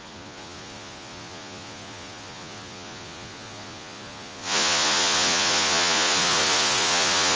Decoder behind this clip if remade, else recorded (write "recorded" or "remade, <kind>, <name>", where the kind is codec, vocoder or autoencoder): remade, vocoder, Vocos